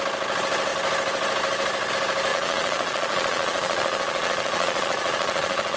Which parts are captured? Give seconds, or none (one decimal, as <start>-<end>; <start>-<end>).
0.0-2.3